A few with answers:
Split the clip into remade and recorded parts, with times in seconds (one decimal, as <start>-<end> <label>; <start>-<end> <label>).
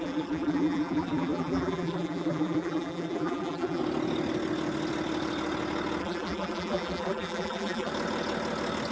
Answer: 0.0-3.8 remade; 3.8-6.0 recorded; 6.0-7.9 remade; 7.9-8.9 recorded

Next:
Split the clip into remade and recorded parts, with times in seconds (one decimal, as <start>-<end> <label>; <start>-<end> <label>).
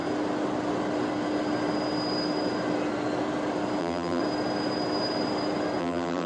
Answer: 0.0-3.8 recorded; 3.8-4.2 remade; 4.2-5.8 recorded; 5.8-6.3 remade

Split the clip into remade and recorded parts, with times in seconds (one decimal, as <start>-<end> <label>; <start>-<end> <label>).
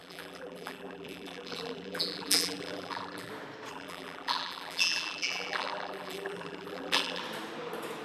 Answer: 0.0-3.3 remade; 3.3-3.7 recorded; 3.7-7.2 remade; 7.2-8.0 recorded